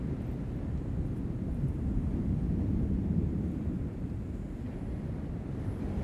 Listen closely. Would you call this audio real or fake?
real